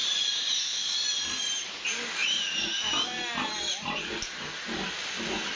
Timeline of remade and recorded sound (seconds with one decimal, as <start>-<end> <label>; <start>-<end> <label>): 0.0-5.6 recorded